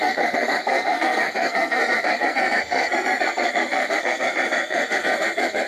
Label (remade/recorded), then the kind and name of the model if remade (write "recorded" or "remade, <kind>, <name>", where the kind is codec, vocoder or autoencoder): remade, codec, SNAC